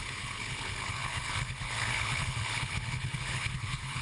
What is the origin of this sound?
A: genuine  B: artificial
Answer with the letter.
B